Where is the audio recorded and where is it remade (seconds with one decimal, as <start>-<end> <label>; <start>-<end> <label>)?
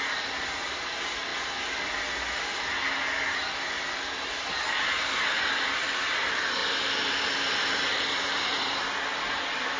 0.0-9.8 recorded